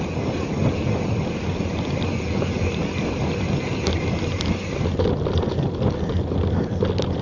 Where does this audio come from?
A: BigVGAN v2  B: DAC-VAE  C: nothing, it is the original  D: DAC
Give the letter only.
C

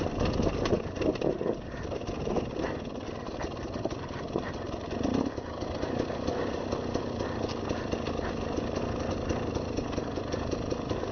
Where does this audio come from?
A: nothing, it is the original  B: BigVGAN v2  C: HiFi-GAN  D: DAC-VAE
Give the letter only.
A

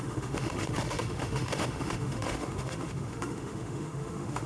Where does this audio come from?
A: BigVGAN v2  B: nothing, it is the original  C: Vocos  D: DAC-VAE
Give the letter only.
D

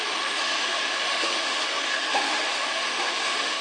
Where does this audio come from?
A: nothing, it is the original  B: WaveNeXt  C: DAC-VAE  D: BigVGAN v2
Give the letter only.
C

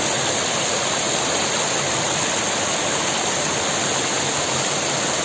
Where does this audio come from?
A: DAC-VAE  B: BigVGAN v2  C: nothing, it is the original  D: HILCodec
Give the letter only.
C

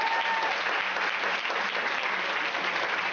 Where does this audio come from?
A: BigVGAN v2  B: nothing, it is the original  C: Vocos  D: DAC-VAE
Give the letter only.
B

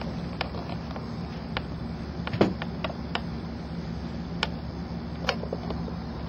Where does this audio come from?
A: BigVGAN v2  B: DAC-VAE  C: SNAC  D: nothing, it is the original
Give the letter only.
D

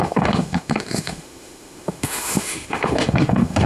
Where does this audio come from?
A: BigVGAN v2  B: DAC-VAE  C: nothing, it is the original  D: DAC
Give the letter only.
B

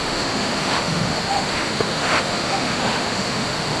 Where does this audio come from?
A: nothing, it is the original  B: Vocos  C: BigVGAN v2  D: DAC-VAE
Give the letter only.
D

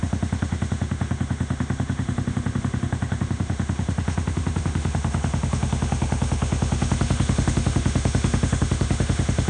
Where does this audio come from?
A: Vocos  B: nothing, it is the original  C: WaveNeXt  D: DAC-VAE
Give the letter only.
D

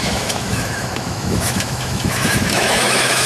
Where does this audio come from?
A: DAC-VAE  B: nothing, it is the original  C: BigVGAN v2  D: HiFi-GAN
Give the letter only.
A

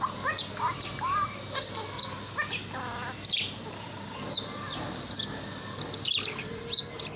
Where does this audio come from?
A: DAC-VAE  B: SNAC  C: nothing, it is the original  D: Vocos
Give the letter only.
C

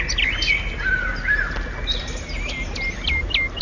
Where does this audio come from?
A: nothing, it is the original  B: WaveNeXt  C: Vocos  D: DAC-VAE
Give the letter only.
A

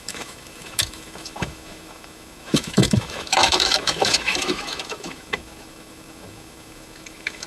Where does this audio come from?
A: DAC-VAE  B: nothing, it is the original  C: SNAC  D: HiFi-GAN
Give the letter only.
A